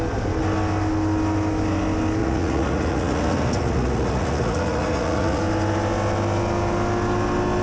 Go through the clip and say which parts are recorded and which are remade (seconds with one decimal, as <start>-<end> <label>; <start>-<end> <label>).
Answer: 0.0-2.2 recorded; 2.2-5.4 remade; 5.4-7.6 recorded